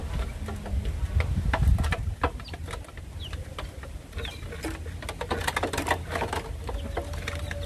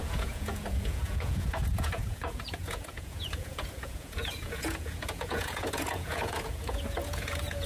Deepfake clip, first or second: second